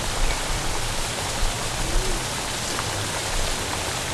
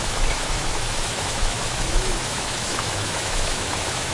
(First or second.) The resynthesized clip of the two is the second